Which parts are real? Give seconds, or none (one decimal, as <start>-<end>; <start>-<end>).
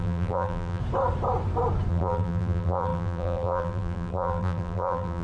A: 0.8-1.9